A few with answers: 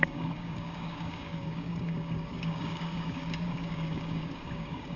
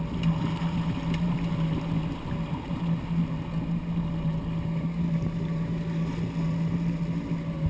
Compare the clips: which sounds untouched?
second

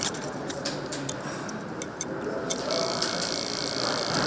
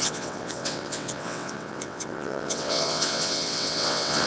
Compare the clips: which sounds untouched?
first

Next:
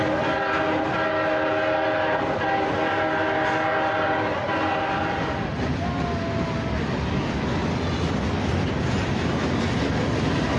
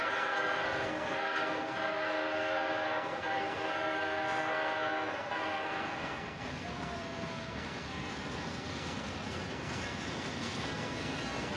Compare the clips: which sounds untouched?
first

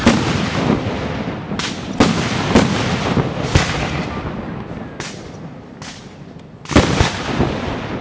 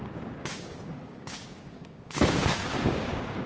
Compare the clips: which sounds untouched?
first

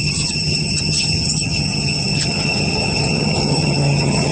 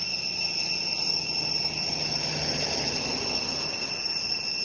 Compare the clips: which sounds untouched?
second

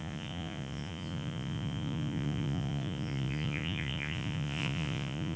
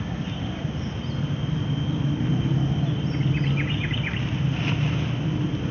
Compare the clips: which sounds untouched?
second